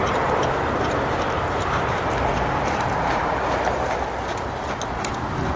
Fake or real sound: real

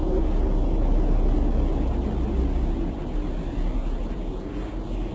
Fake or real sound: real